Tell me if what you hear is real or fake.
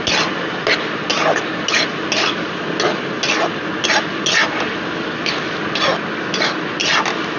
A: real